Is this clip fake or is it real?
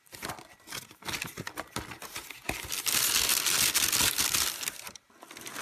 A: real